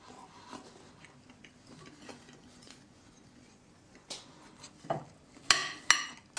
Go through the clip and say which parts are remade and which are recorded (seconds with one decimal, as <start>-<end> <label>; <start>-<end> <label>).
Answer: 0.0-2.1 recorded; 2.1-4.5 remade; 4.5-6.4 recorded